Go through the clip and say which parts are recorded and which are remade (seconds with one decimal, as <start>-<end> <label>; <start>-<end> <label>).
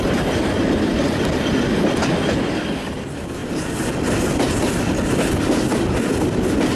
0.0-6.7 recorded